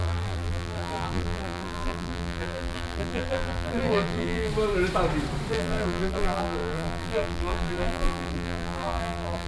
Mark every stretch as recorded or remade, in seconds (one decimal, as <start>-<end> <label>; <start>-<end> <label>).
0.0-4.5 remade; 4.5-5.5 recorded; 5.5-9.5 remade